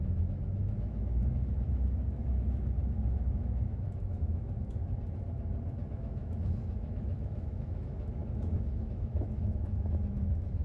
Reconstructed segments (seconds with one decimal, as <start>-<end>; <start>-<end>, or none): 0.0-4.8; 5.9-10.6